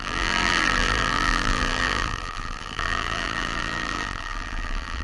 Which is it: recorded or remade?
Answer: remade